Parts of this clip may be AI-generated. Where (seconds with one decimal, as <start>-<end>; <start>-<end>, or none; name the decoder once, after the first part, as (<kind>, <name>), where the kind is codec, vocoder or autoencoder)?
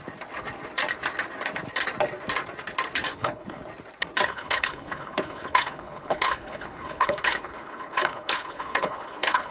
3.1-3.6 (codec, HILCodec); 4.3-9.5